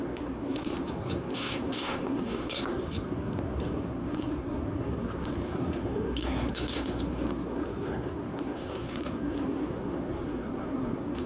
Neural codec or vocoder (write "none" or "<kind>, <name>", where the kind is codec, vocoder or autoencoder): codec, SNAC